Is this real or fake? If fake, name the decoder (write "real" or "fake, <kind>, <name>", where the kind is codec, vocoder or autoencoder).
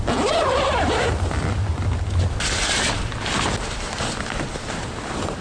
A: real